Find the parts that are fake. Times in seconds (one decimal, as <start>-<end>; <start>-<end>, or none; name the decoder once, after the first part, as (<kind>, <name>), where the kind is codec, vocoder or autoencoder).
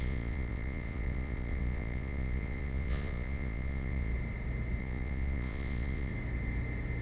0.0-4.1 (vocoder, Vocos); 4.8-6.1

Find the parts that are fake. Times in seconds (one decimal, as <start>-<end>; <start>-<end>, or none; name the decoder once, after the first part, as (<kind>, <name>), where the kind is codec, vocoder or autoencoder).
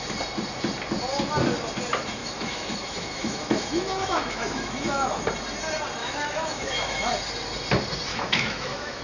2.2-5.2 (autoencoder, DAC-VAE); 6.0-7.1; 8.1-9.0